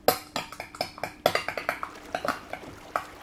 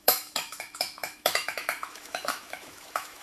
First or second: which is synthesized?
second